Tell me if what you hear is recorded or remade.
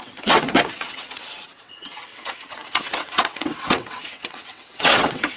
remade